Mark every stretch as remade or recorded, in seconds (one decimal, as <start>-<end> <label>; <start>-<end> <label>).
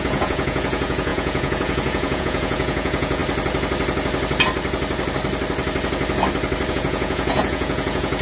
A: 0.0-3.2 remade; 3.2-6.7 recorded; 6.7-8.2 remade